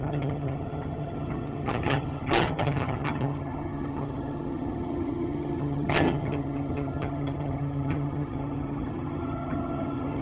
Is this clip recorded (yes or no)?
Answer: no